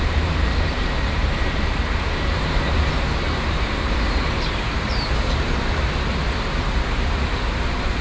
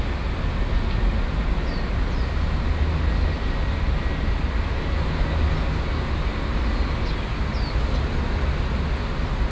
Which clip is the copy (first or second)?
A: first